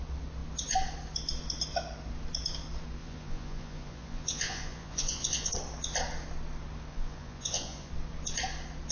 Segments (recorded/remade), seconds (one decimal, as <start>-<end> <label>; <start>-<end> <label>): 0.0-3.0 recorded; 3.0-5.5 remade; 5.5-6.9 recorded; 6.9-7.9 remade; 7.9-8.9 recorded